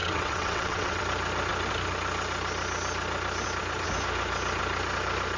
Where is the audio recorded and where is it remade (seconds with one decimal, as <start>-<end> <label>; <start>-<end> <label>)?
0.0-1.0 remade; 1.0-5.4 recorded